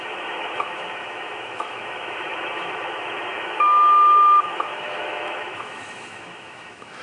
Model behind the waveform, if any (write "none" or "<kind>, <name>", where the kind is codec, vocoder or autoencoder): autoencoder, DAC-VAE